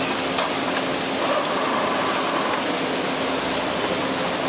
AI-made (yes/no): no